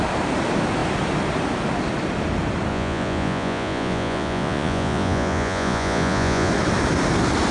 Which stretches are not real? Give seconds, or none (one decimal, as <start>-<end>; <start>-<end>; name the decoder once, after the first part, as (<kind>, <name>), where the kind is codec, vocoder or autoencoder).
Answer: 2.7-6.5 (vocoder, Vocos)